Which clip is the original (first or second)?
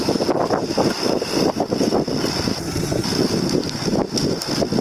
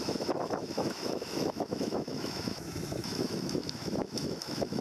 first